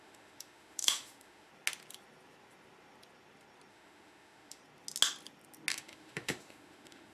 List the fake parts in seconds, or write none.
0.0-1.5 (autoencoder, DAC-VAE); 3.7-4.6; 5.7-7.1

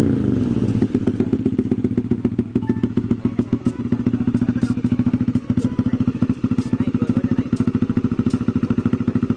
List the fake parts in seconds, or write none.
2.5-3.8 (autoencoder, DAC-VAE)

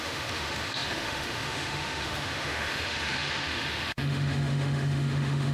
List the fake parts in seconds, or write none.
0.0-5.5 (autoencoder, DAC-VAE)

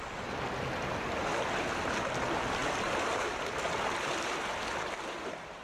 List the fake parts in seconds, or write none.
none